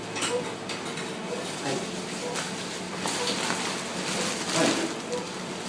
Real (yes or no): yes